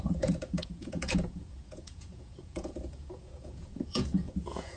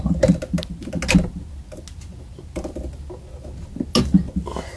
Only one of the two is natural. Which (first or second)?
second